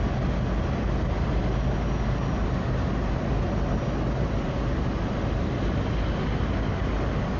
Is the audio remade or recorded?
recorded